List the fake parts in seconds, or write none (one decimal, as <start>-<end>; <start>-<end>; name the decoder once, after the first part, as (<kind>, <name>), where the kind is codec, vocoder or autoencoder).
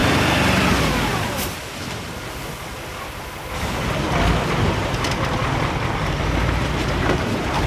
0.0-1.6 (vocoder, BigVGAN v2); 6.0-7.7